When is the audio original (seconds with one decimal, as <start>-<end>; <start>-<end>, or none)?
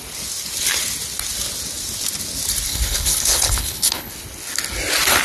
0.0-2.7; 4.1-5.2